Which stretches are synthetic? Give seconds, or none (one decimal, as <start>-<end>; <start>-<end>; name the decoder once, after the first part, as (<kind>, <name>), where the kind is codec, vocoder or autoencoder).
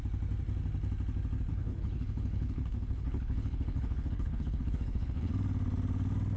1.5-5.3 (codec, HILCodec)